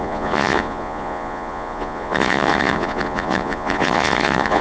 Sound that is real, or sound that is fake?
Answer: fake